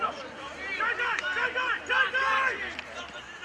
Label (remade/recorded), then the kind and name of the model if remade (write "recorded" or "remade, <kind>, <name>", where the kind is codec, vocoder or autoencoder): remade, vocoder, BigVGAN v2